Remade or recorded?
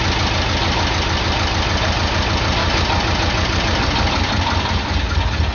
recorded